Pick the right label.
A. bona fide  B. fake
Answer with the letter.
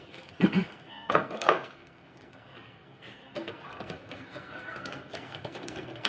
B